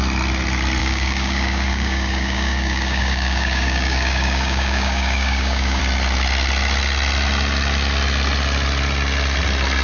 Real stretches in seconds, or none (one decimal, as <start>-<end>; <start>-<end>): 0.0-0.8; 5.8-9.8